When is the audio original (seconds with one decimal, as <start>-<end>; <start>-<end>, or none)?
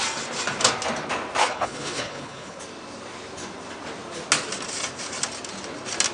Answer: 0.0-1.4; 2.6-6.1